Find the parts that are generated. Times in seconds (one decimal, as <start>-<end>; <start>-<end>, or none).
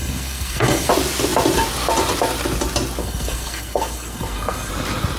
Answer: 0.0-0.9; 3.0-4.7